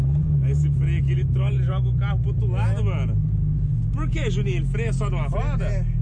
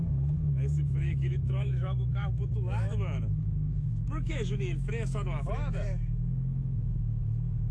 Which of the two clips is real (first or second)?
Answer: first